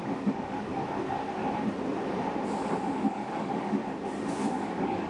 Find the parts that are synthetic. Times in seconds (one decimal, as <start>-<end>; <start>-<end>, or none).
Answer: 0.0-0.7; 3.1-3.8; 4.5-5.1